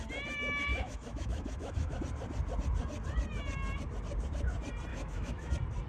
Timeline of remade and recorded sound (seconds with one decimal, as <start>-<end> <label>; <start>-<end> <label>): 0.0-0.7 recorded; 0.7-2.0 remade; 2.0-4.9 recorded; 4.9-5.5 remade; 5.5-5.9 recorded